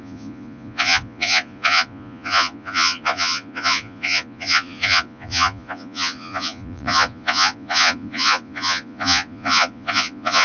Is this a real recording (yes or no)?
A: no